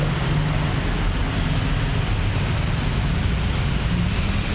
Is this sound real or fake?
real